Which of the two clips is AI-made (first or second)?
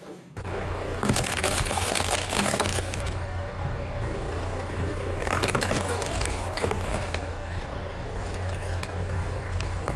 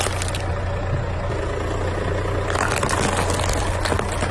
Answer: first